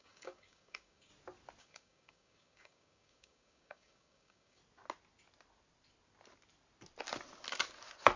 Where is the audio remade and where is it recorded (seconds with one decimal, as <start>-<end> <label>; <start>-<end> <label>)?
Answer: 0.0-1.1 remade; 1.1-1.6 recorded; 1.6-4.6 remade; 4.6-8.2 recorded